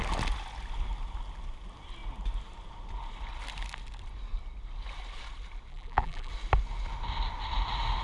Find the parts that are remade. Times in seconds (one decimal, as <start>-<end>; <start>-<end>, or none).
5.7-6.3